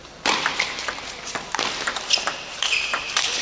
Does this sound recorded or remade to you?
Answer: remade